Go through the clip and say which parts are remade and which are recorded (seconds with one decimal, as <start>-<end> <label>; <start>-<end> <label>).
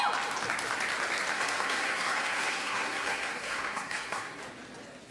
0.0-1.3 recorded; 1.3-4.4 remade; 4.4-5.1 recorded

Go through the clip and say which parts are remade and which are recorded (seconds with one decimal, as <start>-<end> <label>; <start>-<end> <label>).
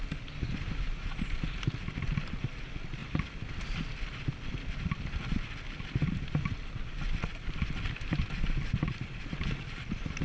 0.0-10.2 recorded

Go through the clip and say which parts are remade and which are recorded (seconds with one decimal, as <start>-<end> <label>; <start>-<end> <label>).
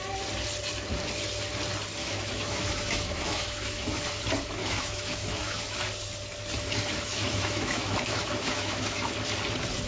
0.0-2.0 recorded; 2.0-4.0 remade; 4.0-4.6 recorded; 4.6-5.6 remade; 5.6-7.1 recorded; 7.1-9.1 remade; 9.1-9.9 recorded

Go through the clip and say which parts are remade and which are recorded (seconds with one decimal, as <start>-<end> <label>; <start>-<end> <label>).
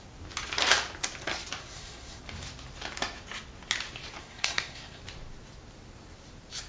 0.0-1.6 recorded; 1.6-2.2 remade; 2.2-4.2 recorded; 4.2-5.0 remade; 5.0-6.7 recorded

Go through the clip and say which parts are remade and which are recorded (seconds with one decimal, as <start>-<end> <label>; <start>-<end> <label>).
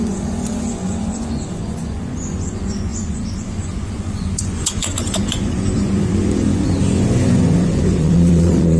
0.0-8.8 remade